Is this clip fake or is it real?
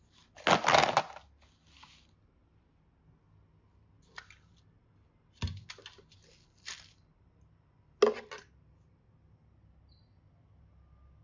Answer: real